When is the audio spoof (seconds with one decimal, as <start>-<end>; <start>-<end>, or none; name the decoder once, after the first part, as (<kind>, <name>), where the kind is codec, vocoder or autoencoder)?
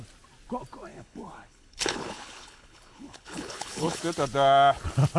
0.9-4.0 (codec, HILCodec)